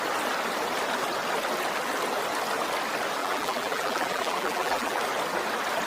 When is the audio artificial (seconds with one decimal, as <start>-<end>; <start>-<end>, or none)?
3.2-5.0